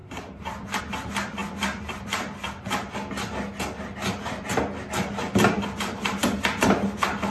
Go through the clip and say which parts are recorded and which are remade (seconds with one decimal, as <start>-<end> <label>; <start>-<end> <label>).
0.0-7.3 recorded